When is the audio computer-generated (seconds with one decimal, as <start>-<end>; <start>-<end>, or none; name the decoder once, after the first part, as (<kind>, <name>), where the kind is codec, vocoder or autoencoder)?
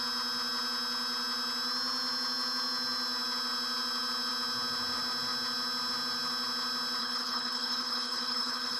7.0-8.8 (codec, HILCodec)